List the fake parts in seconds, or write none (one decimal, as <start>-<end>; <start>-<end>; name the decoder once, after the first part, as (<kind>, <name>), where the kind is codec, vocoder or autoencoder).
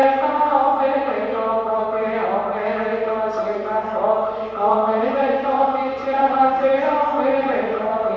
4.7-7.6 (vocoder, Vocos)